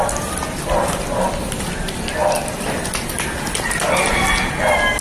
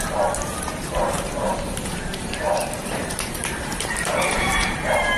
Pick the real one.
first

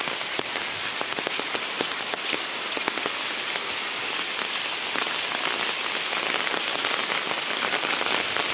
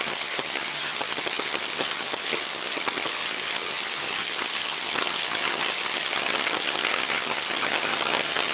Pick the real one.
first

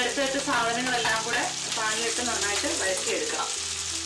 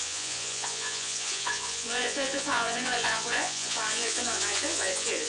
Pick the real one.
first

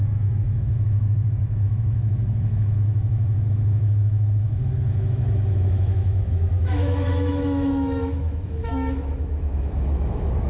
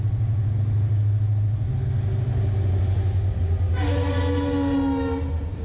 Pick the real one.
second